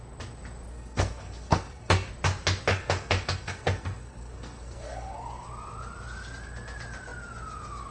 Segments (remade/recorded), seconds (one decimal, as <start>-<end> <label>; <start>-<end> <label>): 0.0-0.7 recorded; 0.7-2.1 remade; 2.1-2.7 recorded; 2.7-5.5 remade; 5.5-7.9 recorded